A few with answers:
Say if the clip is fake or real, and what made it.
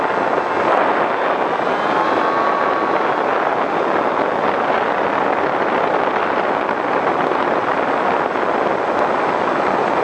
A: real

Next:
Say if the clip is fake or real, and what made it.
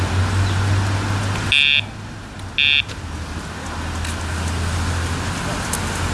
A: real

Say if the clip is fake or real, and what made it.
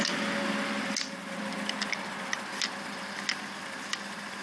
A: real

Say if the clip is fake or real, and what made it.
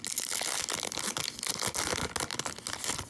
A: real